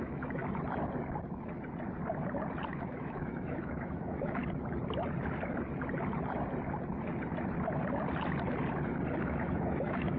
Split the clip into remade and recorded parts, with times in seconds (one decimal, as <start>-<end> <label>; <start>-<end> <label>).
0.0-0.4 remade; 0.4-2.7 recorded; 2.7-4.4 remade; 4.4-9.2 recorded; 9.2-10.2 remade

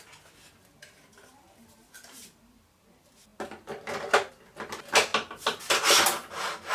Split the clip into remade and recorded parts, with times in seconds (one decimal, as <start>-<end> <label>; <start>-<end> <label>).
0.0-6.7 recorded

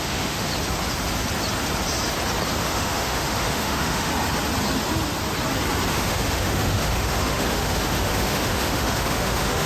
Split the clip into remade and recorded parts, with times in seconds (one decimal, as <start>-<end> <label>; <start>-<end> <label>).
0.0-0.5 remade; 0.5-2.6 recorded; 2.6-4.1 remade; 4.1-5.9 recorded; 5.9-9.7 remade

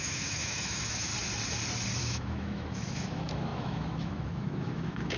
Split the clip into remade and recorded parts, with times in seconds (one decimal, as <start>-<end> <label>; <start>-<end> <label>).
0.0-1.1 remade; 1.1-2.0 recorded; 2.0-5.2 remade

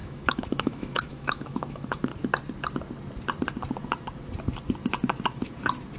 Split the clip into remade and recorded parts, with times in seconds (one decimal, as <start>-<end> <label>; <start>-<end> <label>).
0.0-2.1 remade; 2.1-6.0 recorded

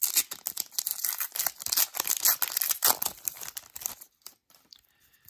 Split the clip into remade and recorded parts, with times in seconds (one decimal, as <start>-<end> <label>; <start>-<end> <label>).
0.0-5.3 recorded

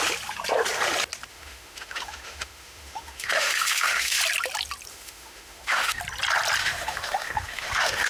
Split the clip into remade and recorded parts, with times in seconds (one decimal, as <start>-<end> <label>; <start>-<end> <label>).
0.0-1.3 recorded; 1.3-4.2 remade; 4.2-4.9 recorded; 4.9-6.0 remade; 6.0-6.6 recorded; 6.6-8.1 remade